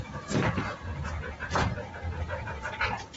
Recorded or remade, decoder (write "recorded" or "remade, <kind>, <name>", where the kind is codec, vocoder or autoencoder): remade, vocoder, Vocos